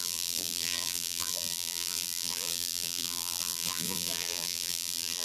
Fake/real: fake